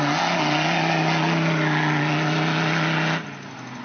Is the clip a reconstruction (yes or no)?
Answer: no